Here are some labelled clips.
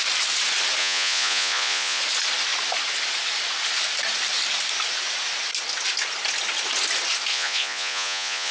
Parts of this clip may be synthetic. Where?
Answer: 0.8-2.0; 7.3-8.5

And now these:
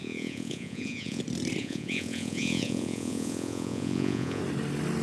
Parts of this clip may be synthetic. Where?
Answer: 0.0-1.2; 1.6-4.4

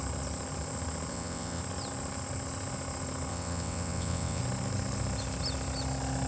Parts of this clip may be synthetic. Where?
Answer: 1.1-1.6; 3.3-4.4

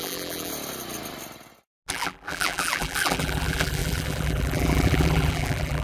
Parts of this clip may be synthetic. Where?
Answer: 0.0-0.5; 1.9-5.8

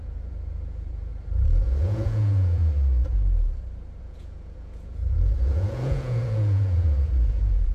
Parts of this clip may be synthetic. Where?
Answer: 0.0-1.1; 1.8-2.6; 4.0-7.7

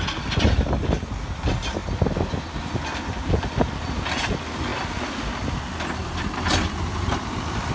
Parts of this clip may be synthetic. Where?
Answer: 6.0-7.1

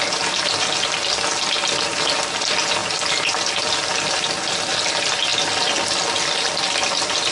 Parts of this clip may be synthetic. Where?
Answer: none